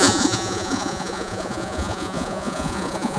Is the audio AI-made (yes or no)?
yes